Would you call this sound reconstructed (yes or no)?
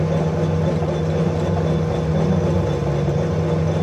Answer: no